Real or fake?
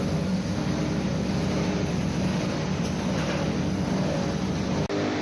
real